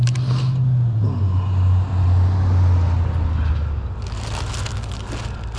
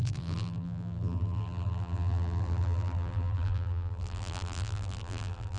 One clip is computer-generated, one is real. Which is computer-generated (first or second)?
second